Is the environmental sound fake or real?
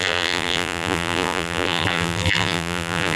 fake